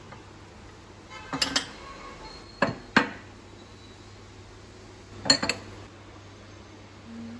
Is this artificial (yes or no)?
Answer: no